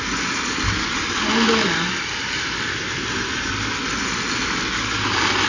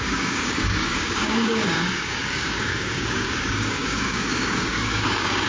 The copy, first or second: second